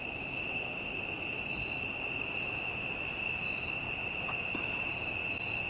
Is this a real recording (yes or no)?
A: yes